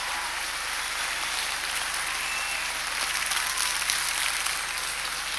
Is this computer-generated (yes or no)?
no